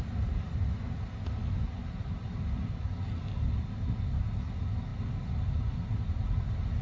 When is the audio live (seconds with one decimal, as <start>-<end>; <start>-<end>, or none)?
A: 0.0-6.8